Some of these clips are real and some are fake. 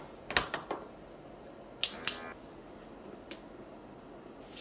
real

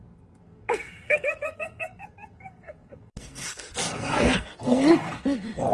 fake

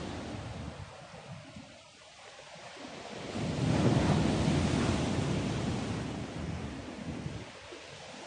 real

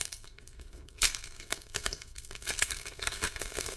fake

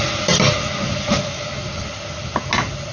real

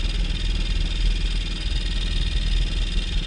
real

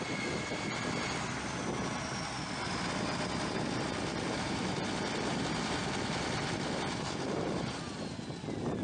real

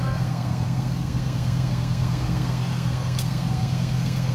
fake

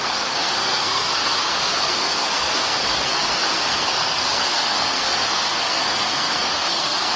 fake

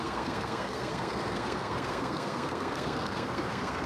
fake